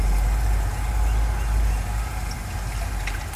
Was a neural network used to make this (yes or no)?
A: no